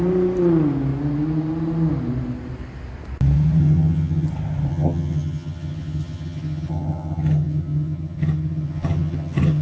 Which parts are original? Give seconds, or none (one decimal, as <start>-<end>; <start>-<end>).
0.0-3.6; 4.3-4.7